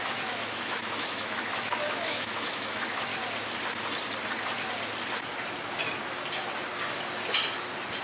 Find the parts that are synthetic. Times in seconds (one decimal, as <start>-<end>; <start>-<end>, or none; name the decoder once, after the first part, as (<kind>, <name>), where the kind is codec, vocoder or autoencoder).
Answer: 0.0-3.1 (autoencoder, DAC-VAE)